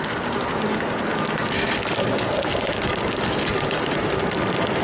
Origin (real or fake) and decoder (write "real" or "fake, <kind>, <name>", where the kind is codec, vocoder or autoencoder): real